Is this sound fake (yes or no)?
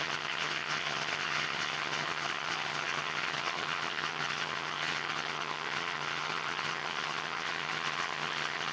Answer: yes